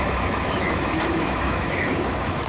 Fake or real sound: fake